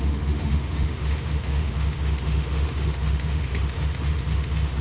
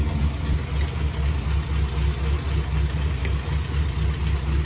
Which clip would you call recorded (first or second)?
second